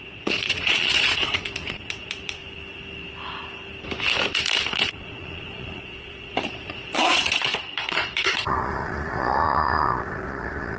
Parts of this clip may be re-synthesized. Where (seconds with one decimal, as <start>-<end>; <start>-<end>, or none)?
0.0-2.4; 4.7-10.8